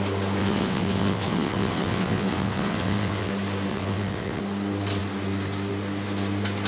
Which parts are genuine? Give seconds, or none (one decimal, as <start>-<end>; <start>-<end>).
0.0-0.4; 3.3-3.7; 4.4-6.7